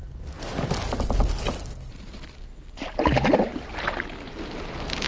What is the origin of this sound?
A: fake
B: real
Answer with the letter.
B